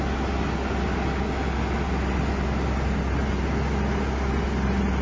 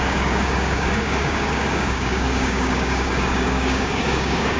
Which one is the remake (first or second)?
second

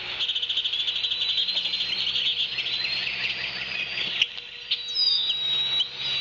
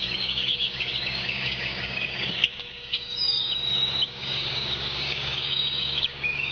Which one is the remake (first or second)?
second